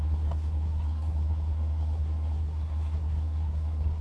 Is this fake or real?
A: fake